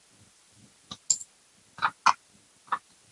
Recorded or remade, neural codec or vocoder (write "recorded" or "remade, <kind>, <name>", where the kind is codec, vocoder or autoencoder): recorded